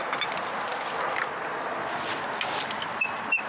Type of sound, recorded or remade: recorded